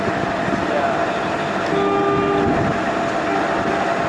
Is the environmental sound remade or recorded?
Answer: recorded